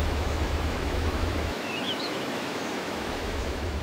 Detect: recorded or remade remade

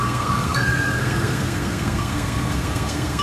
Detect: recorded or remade remade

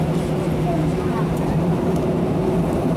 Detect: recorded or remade remade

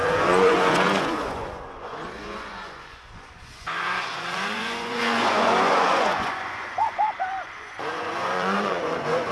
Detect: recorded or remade remade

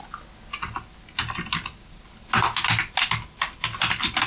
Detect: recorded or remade recorded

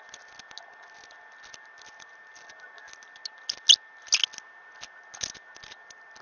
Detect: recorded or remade recorded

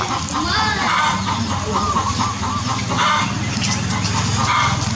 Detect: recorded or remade recorded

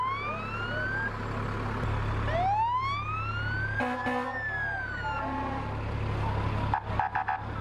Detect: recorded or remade recorded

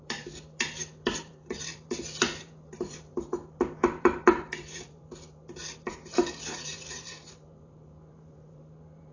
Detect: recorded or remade remade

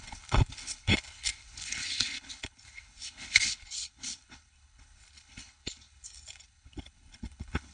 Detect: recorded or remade remade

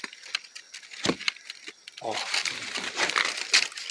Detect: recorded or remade recorded